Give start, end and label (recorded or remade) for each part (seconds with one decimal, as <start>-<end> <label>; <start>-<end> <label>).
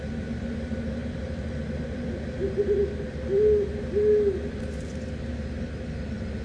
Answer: 0.0-6.4 recorded